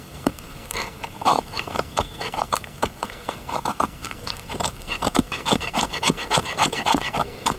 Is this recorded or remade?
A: remade